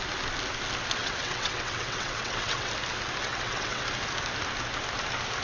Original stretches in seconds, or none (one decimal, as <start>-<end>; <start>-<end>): 0.0-1.0; 2.7-3.2; 3.8-5.4